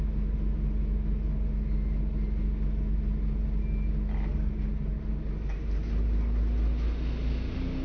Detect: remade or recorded recorded